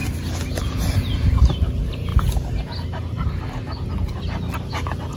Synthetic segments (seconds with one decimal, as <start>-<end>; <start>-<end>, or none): none